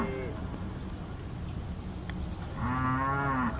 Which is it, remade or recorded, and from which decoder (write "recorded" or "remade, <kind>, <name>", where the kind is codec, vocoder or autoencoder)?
recorded